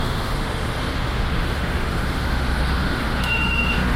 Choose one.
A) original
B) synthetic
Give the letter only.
B